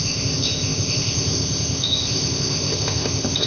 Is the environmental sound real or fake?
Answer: fake